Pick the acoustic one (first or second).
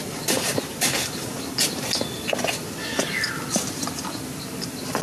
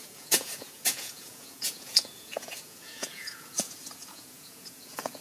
first